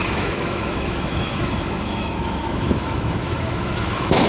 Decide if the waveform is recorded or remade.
remade